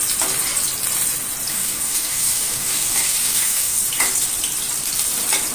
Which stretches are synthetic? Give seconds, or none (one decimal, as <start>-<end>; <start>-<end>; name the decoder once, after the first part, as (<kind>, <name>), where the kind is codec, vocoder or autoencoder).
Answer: 1.5-3.8 (codec, DAC)

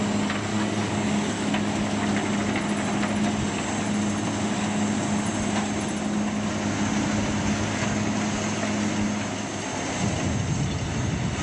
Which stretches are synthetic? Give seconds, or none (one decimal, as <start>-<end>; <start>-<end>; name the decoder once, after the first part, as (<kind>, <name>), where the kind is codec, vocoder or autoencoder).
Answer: 0.5-1.5 (codec, DAC)

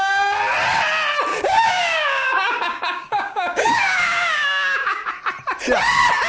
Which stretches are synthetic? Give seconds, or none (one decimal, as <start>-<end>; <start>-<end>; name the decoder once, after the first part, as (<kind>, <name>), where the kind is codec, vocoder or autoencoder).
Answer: 1.3-5.1 (codec, DAC)

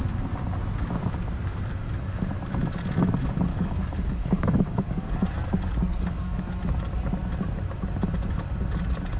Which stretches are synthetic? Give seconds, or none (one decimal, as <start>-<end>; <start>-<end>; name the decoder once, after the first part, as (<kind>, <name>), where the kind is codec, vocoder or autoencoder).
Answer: 1.8-2.3 (codec, DAC); 3.5-5.1; 5.9-6.5

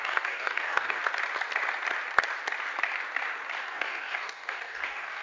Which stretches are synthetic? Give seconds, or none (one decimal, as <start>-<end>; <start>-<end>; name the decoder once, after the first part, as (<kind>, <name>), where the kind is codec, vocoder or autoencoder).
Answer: 0.0-1.0 (codec, DAC); 3.6-5.2

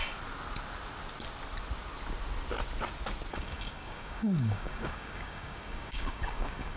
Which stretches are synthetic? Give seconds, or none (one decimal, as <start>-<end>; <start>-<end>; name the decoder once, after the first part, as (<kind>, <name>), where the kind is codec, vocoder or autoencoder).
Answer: 3.3-6.8 (codec, DAC)